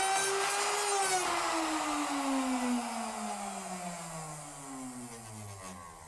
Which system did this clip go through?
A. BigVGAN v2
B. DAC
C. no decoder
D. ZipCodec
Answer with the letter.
C